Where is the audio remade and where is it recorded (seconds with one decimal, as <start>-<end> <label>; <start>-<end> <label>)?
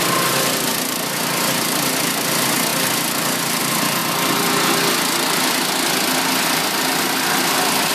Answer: 0.0-7.9 recorded